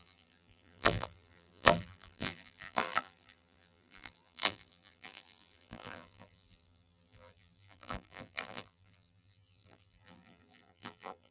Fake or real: fake